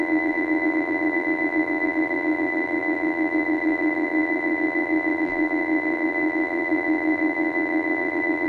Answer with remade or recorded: remade